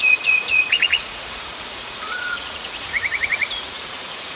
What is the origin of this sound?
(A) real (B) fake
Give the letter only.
B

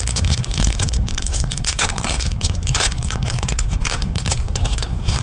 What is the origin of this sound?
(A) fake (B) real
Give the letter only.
A